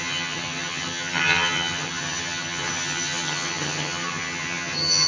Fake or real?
fake